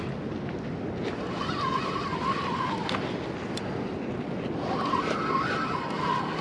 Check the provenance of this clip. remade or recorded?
recorded